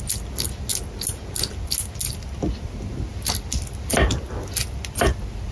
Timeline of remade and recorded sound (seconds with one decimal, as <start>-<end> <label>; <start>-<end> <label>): 0.0-5.5 recorded